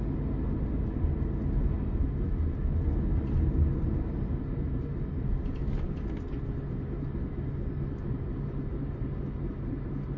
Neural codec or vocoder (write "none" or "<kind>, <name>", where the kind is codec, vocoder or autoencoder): none